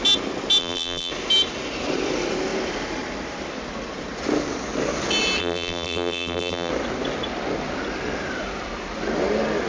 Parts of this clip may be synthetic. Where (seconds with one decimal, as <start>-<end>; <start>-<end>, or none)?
0.6-1.1; 5.4-6.7